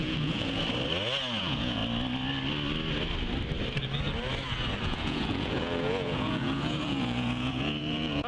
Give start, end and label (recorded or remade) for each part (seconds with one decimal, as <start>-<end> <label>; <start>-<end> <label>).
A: 0.0-0.6 remade; 0.6-1.4 recorded; 1.4-1.8 remade; 1.8-4.8 recorded; 4.8-8.3 remade